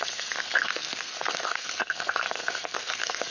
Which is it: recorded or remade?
remade